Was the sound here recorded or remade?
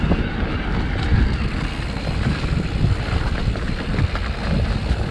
recorded